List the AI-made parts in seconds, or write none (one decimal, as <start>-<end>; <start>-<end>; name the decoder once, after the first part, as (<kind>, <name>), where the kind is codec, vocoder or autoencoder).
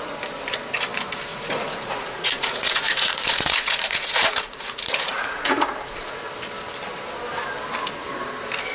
1.3-6.2 (vocoder, Vocos)